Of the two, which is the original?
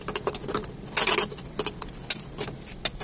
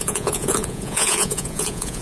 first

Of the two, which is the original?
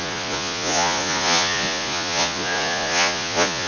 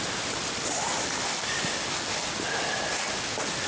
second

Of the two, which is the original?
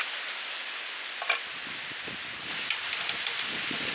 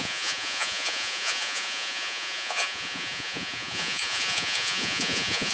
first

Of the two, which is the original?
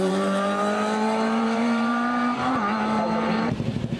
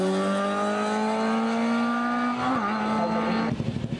second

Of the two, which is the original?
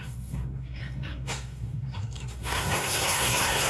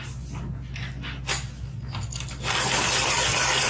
second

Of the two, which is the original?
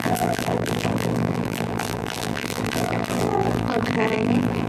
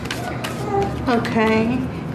second